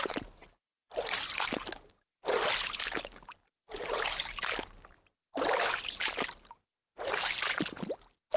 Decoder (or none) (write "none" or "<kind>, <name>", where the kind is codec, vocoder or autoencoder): none